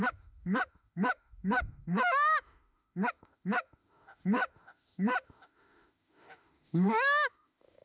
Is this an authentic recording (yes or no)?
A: no